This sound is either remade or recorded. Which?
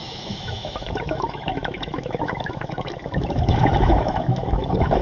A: remade